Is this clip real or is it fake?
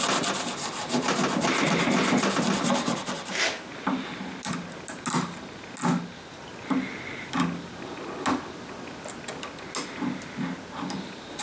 real